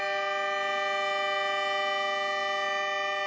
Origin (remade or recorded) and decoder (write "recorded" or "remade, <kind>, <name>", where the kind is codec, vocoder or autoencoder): recorded